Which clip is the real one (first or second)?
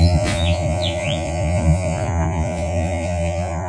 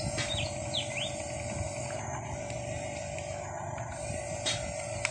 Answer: second